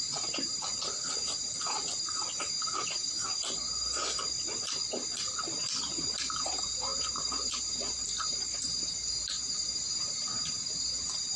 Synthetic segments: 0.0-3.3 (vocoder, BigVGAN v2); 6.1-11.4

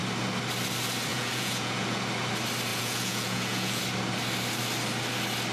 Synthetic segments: 1.1-2.0 (vocoder, Vocos); 2.7-3.8

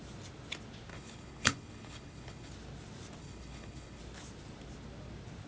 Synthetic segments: 0.9-2.5 (codec, HILCodec); 3.2-4.0

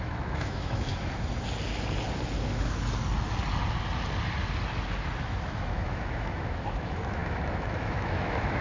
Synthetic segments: 0.0-0.9 (autoencoder, DAC-VAE); 5.2-8.6

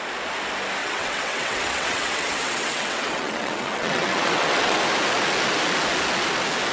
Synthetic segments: 0.8-4.8 (vocoder, WaveNeXt)

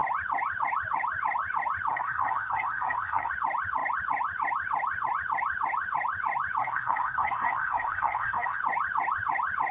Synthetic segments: 1.9-3.3 (codec, SNAC); 6.6-8.6

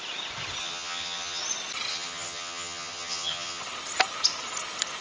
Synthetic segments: 0.6-1.4 (vocoder, HiFi-GAN); 1.9-3.6